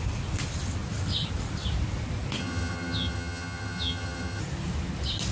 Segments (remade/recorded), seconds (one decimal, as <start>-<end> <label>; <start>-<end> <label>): 0.0-2.4 recorded; 2.4-4.4 remade; 4.4-5.3 recorded